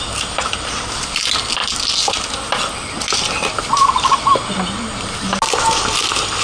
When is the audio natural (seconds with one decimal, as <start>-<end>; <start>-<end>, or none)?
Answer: 0.0-6.4